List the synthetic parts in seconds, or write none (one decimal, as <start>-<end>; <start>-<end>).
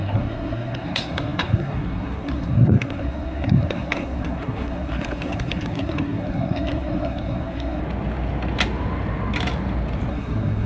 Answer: 0.0-7.8; 10.1-10.7